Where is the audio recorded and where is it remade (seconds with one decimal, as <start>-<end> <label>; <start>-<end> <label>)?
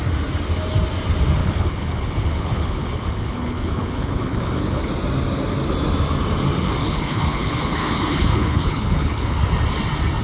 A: 0.0-1.4 recorded; 1.4-4.8 remade; 4.8-6.8 recorded; 6.8-9.4 remade; 9.4-10.2 recorded